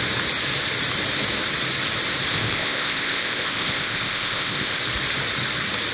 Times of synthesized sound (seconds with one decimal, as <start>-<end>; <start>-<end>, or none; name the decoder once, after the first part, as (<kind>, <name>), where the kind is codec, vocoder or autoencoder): 2.3-4.8 (codec, ZipCodec)